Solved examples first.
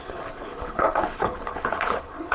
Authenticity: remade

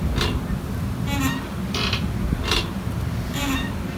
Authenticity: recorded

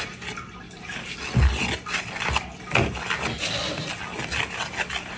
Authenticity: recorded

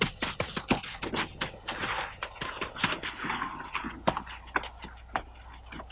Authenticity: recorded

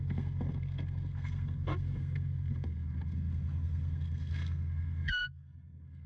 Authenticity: remade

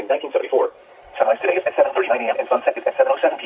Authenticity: remade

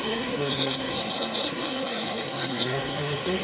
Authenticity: remade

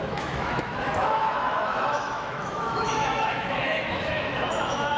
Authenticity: remade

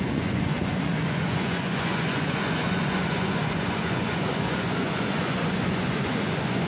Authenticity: remade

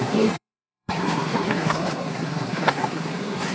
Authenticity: remade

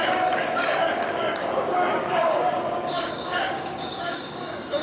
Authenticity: remade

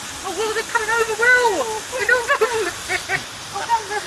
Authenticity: recorded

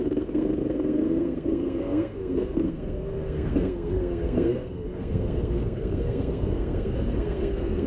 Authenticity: remade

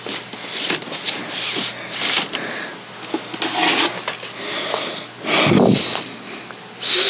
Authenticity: recorded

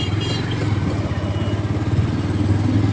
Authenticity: recorded